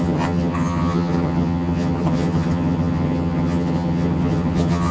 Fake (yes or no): yes